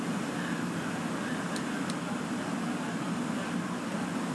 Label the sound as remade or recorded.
recorded